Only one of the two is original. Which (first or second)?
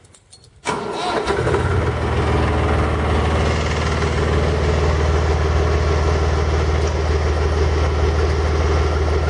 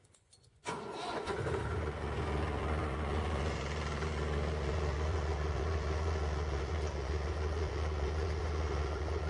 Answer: first